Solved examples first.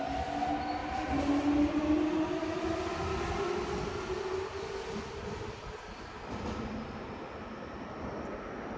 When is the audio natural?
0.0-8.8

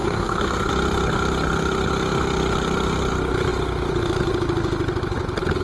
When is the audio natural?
0.7-5.6

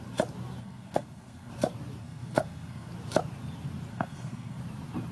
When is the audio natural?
0.0-0.6; 1.5-2.0; 2.9-3.9; 4.6-5.1

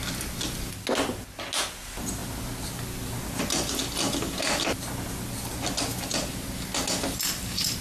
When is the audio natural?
0.0-7.8

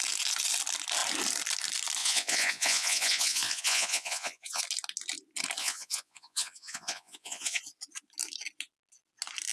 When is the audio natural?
0.0-2.0; 4.6-5.6; 7.6-9.5

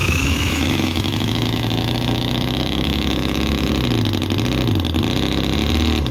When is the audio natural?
3.7-6.1

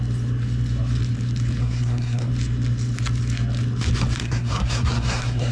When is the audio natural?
0.0-1.6; 2.3-4.2